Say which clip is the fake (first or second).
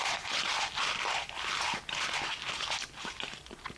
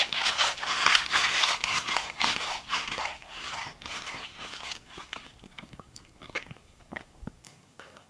second